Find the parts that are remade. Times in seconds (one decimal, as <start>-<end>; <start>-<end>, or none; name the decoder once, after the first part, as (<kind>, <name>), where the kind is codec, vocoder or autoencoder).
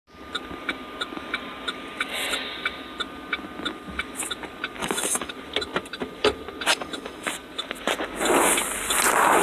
4.8-5.3 (autoencoder, DAC-VAE); 6.7-7.3